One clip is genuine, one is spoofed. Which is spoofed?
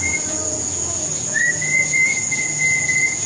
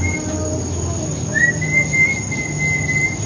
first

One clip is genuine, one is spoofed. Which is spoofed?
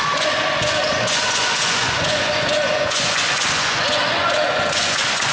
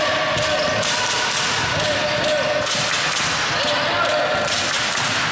first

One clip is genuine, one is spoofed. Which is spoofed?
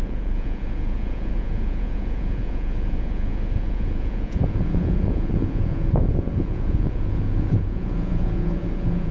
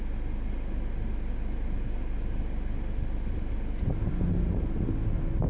first